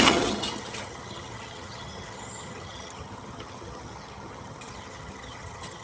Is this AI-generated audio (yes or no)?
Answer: yes